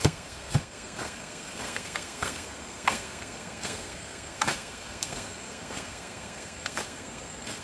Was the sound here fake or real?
fake